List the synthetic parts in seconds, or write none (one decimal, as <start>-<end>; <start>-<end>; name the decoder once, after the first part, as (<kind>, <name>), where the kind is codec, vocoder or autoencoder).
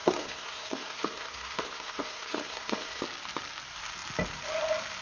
0.0-3.0 (codec, SNAC)